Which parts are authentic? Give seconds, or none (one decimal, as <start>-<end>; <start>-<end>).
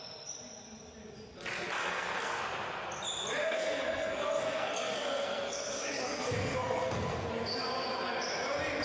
0.0-1.8; 2.4-3.4; 7.3-8.8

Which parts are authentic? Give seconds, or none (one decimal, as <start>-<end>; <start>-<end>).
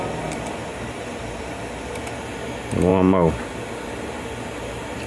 0.0-5.1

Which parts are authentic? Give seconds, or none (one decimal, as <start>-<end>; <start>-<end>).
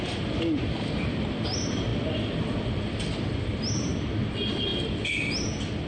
0.0-5.9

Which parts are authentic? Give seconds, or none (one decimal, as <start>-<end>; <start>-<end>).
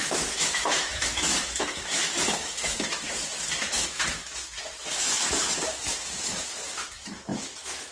none